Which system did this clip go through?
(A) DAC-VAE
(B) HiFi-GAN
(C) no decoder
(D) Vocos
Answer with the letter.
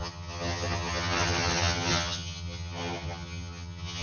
B